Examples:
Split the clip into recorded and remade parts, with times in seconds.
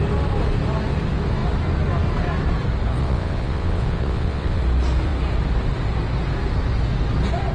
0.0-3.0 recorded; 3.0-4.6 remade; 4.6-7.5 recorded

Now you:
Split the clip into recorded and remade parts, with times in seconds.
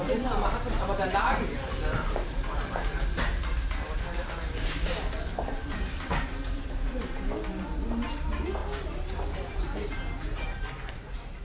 0.0-8.6 remade; 8.6-9.3 recorded; 9.3-11.4 remade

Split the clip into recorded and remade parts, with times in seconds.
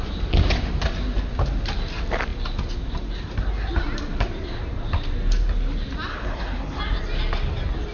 0.0-6.1 recorded; 6.1-6.8 remade; 6.8-7.9 recorded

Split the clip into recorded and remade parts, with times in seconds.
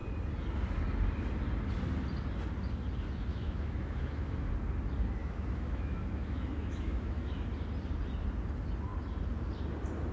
0.0-3.3 recorded; 3.3-4.5 remade; 4.5-5.2 recorded; 5.2-7.5 remade; 7.5-10.1 recorded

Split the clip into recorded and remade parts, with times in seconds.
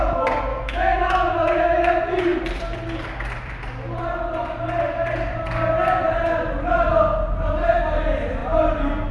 0.0-0.5 recorded; 0.5-1.9 remade; 1.9-9.1 recorded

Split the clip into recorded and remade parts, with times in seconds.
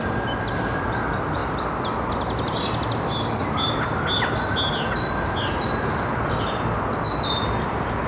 0.0-8.1 recorded